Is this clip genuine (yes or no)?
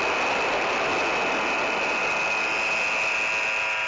yes